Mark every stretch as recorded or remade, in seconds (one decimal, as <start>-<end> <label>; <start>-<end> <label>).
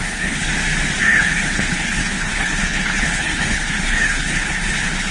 0.0-0.5 remade; 0.5-1.0 recorded; 1.0-5.1 remade